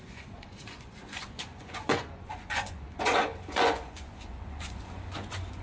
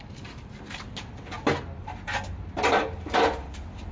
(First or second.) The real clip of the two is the second